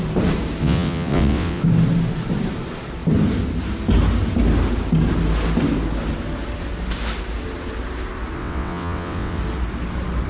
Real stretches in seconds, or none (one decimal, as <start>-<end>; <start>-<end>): 0.0-0.6; 1.6-8.4; 9.4-10.3